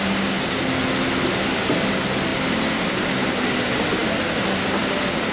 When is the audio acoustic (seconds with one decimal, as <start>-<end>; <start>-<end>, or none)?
0.0-5.3